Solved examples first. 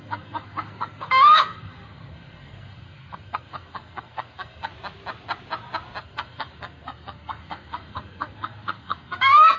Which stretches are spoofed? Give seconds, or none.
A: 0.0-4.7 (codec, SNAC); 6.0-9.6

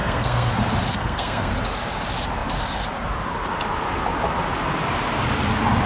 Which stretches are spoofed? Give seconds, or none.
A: 0.0-0.5 (codec, SNAC); 0.9-1.5

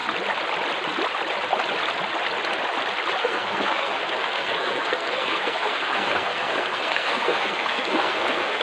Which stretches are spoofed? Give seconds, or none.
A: 3.2-8.6 (codec, SNAC)